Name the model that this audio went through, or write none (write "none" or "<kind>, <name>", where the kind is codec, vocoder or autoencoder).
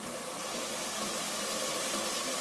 none